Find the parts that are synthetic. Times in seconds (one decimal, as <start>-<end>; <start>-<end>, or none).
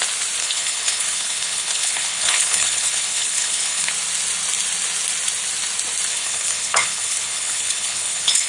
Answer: 0.4-3.9; 6.1-8.5